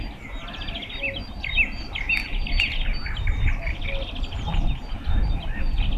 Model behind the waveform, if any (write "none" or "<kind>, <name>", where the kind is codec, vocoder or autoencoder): none